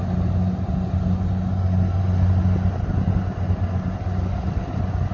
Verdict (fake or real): real